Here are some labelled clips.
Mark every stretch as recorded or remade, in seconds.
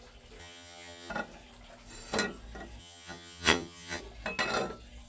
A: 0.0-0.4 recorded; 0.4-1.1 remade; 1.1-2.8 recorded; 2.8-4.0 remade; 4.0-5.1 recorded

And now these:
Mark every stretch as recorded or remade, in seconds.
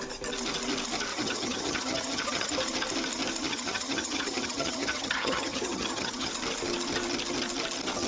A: 0.0-1.1 recorded; 1.1-2.5 remade; 2.5-3.5 recorded; 3.5-6.3 remade; 6.3-8.1 recorded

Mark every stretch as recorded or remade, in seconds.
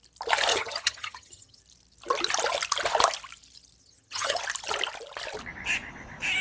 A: 0.0-0.5 recorded; 0.5-1.6 remade; 1.6-3.8 recorded; 3.8-4.4 remade; 4.4-6.4 recorded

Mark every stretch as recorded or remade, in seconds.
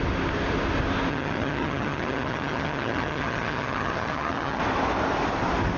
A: 0.0-1.1 recorded; 1.1-4.6 remade; 4.6-5.8 recorded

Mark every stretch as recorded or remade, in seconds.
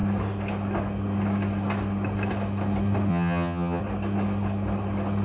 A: 0.0-3.1 recorded; 3.1-3.8 remade; 3.8-5.2 recorded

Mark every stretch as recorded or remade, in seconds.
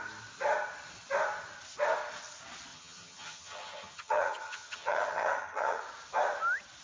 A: 0.0-2.7 recorded; 2.7-5.8 remade; 5.8-6.8 recorded